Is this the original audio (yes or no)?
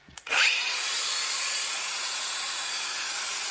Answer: no